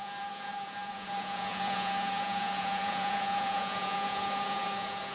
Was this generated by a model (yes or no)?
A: yes